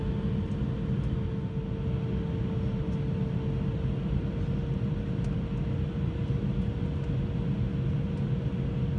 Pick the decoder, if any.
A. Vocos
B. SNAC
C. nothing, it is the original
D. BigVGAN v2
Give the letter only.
C